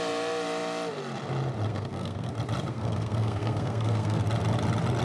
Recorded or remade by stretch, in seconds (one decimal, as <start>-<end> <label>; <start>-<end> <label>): 0.0-1.7 recorded; 1.7-2.3 remade; 2.3-2.7 recorded; 2.7-4.2 remade; 4.2-5.0 recorded